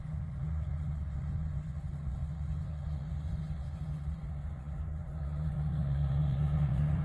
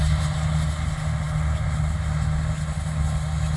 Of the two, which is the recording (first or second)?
second